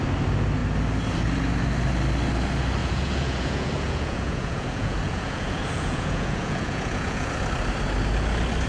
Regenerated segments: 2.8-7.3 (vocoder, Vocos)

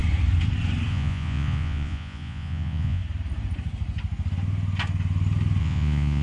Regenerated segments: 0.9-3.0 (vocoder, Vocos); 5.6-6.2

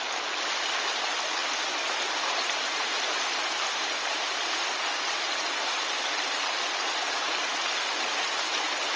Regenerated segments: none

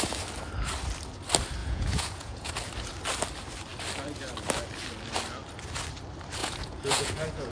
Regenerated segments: 1.6-2.5 (vocoder, Vocos); 6.4-7.5

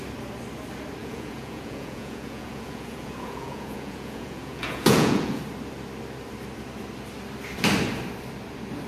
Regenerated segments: 1.0-5.4 (vocoder, Vocos)